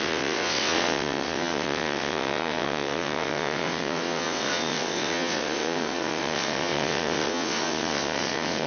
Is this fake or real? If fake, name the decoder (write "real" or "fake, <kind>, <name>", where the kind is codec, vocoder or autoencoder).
fake, vocoder, WaveNeXt